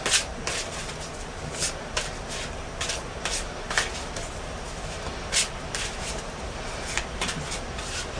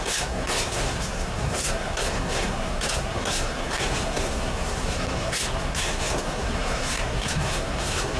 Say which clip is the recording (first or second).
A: first